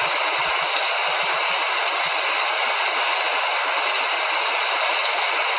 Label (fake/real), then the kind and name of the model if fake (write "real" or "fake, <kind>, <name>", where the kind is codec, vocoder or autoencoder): real